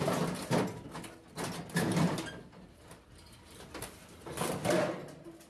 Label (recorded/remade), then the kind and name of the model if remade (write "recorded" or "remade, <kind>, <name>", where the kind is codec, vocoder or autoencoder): recorded